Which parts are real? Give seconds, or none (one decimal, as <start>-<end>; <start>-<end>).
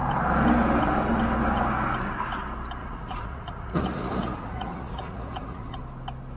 0.0-2.8; 5.8-6.4